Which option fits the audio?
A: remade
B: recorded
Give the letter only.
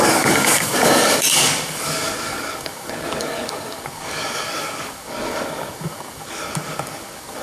A